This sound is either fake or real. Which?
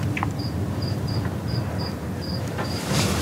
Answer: fake